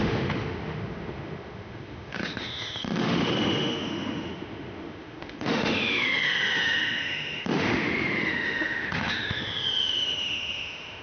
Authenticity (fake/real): fake